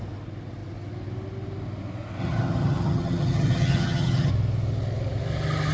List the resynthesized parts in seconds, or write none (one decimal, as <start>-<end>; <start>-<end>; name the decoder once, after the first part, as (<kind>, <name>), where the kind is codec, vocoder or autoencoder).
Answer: 2.2-4.3 (vocoder, HiFi-GAN)